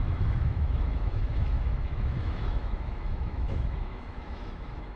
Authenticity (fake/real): fake